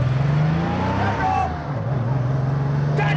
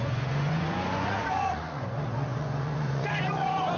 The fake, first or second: second